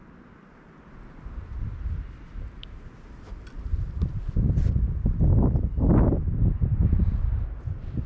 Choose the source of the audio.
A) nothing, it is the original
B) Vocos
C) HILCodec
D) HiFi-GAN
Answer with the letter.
A